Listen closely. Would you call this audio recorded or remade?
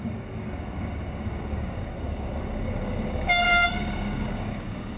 remade